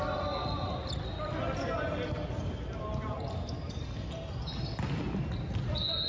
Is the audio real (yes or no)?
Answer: yes